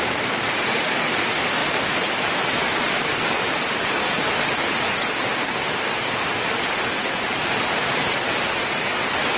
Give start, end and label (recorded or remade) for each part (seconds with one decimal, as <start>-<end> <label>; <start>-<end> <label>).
0.0-9.4 recorded